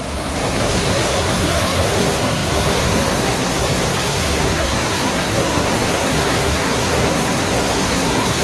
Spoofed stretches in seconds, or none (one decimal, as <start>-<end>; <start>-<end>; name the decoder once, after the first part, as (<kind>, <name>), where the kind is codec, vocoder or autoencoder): 0.0-8.4 (codec, SNAC)